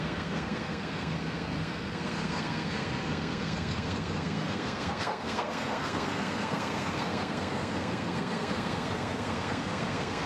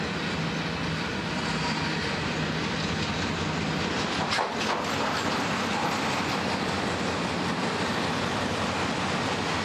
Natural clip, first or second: second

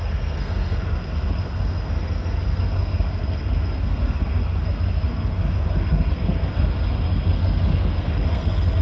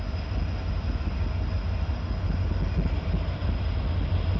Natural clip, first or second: second